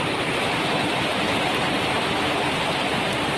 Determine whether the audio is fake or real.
real